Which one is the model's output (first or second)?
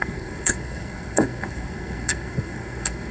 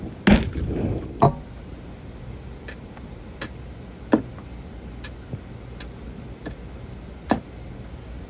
first